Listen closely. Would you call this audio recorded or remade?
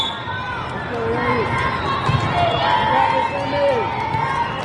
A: recorded